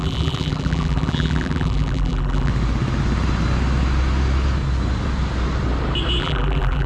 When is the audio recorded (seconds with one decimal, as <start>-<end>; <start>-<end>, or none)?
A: 2.5-6.2